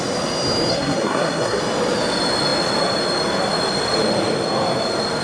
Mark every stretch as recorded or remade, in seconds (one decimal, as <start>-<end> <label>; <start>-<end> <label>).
0.0-0.7 recorded; 0.7-1.6 remade; 1.6-5.2 recorded